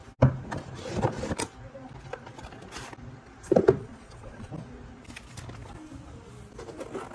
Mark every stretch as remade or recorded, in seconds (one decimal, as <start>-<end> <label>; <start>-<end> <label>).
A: 0.0-3.8 recorded; 3.8-4.5 remade; 4.5-7.1 recorded